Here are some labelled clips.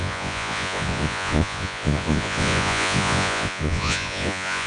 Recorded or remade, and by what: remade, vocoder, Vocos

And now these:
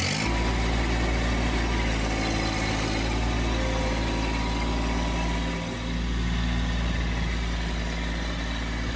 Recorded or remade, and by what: recorded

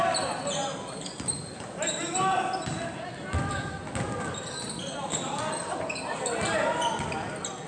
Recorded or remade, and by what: recorded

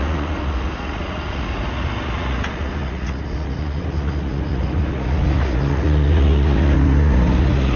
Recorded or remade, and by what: remade, vocoder, Vocos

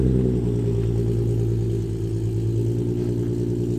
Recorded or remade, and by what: recorded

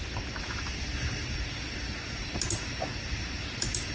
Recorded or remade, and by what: recorded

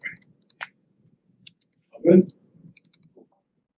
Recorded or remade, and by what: remade, vocoder, Vocos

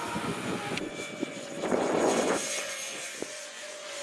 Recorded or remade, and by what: remade, vocoder, Vocos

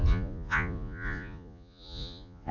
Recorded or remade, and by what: remade, vocoder, Vocos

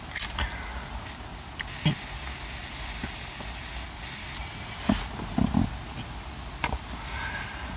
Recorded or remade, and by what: recorded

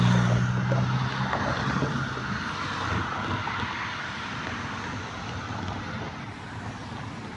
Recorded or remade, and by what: recorded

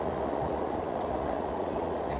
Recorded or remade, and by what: remade, vocoder, Vocos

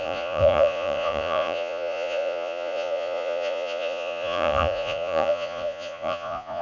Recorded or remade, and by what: remade, vocoder, Vocos